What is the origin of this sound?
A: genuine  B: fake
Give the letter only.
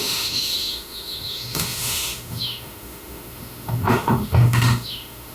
B